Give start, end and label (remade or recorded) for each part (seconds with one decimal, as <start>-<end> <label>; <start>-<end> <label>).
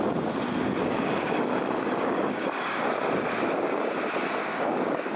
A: 0.0-0.8 recorded; 0.8-3.9 remade; 3.9-4.4 recorded; 4.4-5.2 remade